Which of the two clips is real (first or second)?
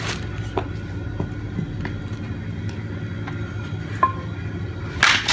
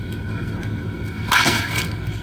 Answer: first